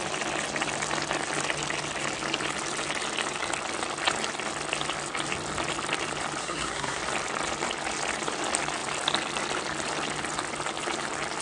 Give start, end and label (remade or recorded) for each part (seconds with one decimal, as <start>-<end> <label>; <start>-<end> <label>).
0.0-6.4 recorded; 6.4-7.0 remade; 7.0-11.4 recorded